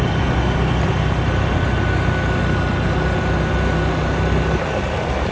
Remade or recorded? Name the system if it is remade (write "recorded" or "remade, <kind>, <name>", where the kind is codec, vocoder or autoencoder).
recorded